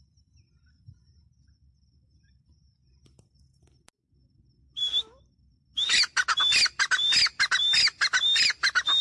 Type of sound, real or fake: real